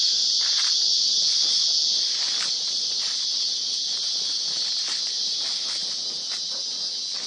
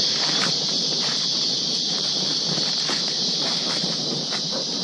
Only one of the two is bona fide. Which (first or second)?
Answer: first